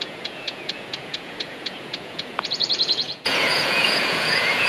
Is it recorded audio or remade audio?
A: remade